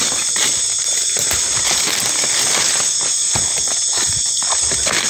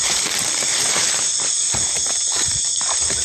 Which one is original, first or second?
first